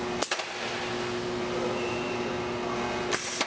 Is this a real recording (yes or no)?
yes